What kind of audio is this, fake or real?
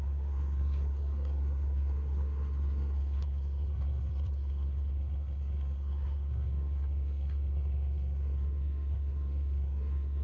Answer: fake